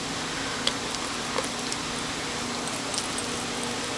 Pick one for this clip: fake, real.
real